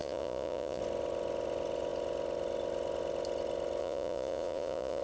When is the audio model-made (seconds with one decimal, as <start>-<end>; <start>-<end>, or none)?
0.0-0.8; 3.8-5.0

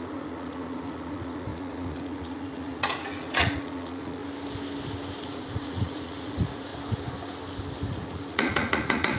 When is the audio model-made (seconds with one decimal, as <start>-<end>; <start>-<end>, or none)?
0.0-4.2; 5.2-6.7; 7.9-9.2

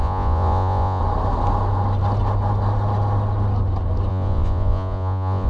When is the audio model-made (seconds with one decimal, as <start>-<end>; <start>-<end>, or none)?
0.0-1.0; 4.1-5.5

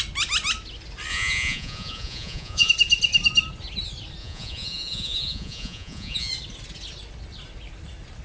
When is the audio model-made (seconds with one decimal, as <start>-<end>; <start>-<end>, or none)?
1.1-2.7; 4.2-6.3

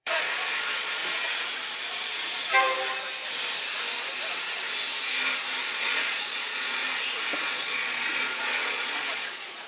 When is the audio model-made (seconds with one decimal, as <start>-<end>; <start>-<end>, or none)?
0.0-1.0; 1.9-2.4; 5.7-6.8; 7.4-9.7